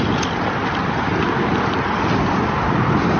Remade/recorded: recorded